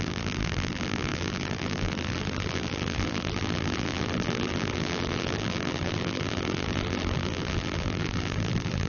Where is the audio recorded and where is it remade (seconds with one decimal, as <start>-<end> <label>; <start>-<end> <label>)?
0.0-8.9 remade